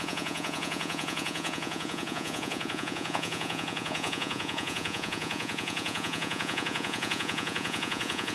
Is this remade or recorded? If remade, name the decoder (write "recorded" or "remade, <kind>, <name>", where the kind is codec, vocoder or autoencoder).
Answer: remade, vocoder, Vocos